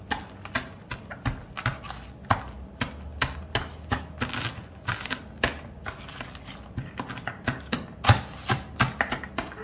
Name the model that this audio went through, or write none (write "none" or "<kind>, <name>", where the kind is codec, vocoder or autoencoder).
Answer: none